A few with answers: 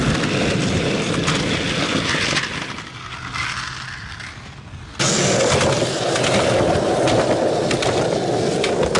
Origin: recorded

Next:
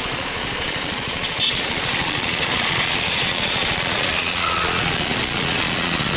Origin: remade